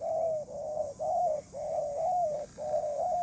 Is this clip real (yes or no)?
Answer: yes